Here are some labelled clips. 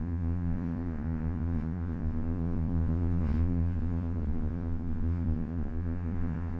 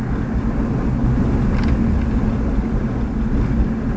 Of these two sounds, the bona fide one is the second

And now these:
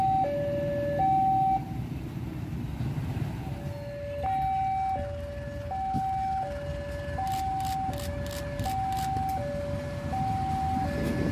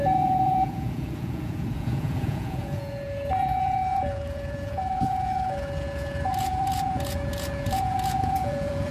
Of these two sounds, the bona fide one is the first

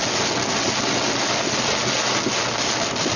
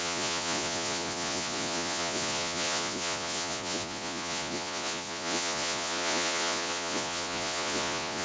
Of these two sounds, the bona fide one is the first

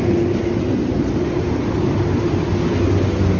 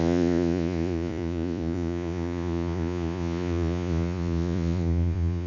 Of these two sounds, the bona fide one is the first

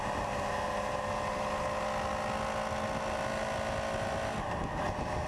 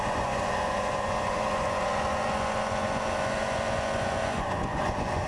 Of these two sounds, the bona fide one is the first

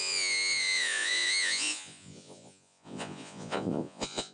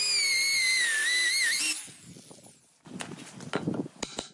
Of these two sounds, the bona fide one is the second